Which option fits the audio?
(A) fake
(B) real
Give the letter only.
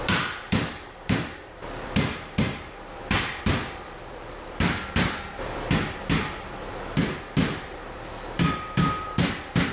A